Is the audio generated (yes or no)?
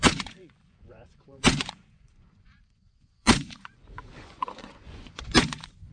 yes